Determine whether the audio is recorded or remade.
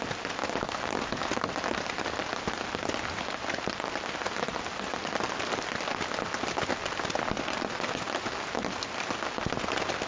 recorded